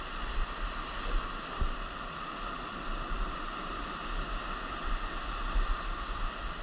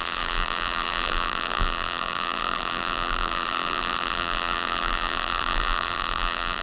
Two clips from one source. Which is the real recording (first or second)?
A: first